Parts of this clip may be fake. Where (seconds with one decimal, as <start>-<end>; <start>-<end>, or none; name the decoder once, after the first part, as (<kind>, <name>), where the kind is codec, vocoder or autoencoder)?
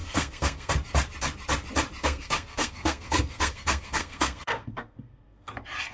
0.0-0.7 (codec, SNAC); 2.0-5.5